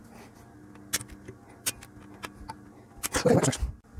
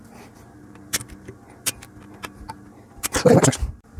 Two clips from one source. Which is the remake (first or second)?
second